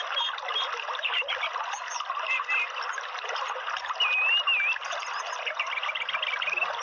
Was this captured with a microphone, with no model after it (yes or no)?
yes